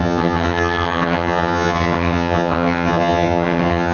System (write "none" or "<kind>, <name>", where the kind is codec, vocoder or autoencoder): vocoder, HiFi-GAN